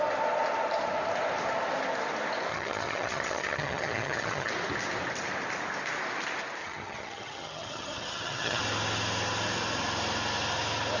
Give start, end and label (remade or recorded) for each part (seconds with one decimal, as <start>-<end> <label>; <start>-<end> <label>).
0.0-2.5 recorded; 2.5-4.5 remade; 4.5-6.6 recorded; 6.6-8.6 remade; 8.6-11.0 recorded

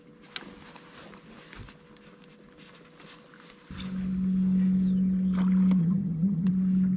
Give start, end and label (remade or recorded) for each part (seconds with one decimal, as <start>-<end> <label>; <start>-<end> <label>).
0.0-5.8 recorded; 5.8-6.5 remade; 6.5-7.0 recorded

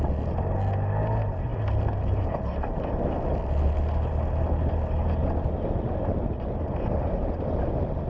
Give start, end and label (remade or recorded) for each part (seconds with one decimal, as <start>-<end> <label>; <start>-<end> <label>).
0.0-8.1 recorded

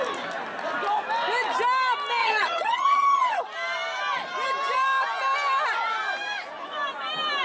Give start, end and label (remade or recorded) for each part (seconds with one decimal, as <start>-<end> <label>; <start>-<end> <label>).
0.0-2.2 recorded; 2.2-3.4 remade; 3.4-7.4 recorded

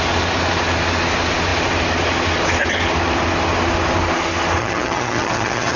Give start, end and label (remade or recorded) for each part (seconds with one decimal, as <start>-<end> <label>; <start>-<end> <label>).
0.0-4.6 recorded; 4.6-5.8 remade

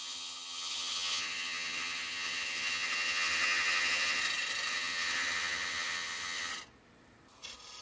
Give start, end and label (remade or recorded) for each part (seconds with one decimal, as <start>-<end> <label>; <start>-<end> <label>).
0.0-4.2 remade; 4.2-4.7 recorded; 4.7-6.5 remade; 6.5-7.8 recorded